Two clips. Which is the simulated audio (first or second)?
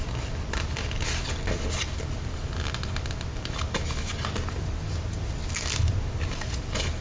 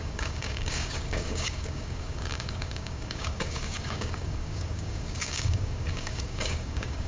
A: second